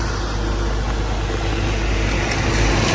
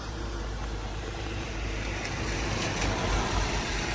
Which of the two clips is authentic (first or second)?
first